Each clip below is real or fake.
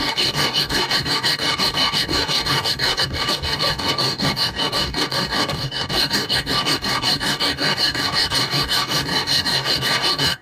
fake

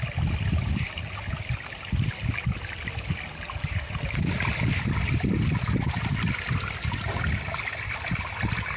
real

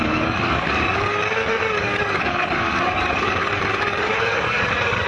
fake